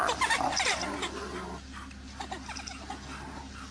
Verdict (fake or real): real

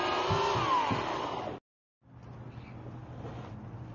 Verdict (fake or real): real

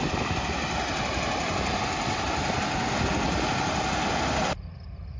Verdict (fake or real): real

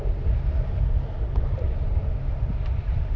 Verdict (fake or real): real